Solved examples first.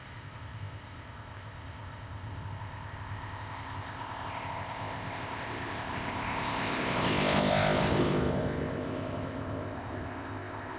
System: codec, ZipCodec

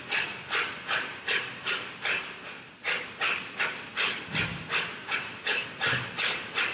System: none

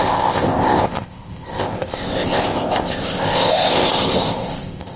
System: codec, ZipCodec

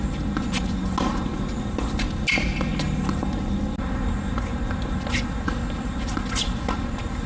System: none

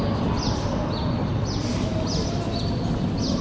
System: none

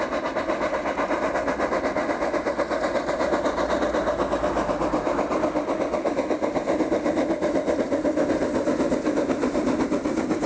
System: none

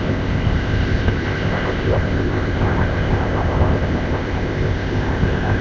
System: codec, ZipCodec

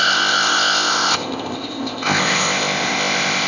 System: codec, ZipCodec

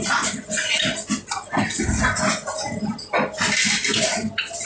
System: none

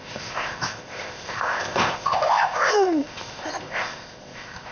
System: codec, ZipCodec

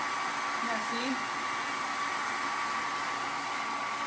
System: none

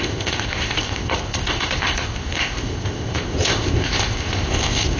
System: codec, ZipCodec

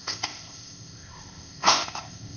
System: codec, ZipCodec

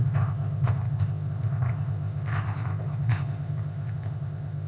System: codec, ZipCodec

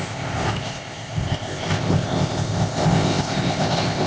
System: codec, ZipCodec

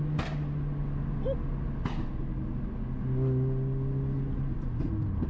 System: none